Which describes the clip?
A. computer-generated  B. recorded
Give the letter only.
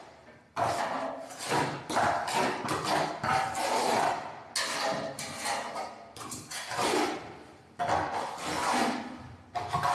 B